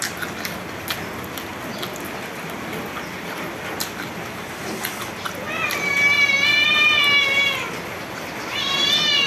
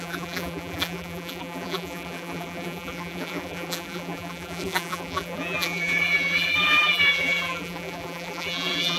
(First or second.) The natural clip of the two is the first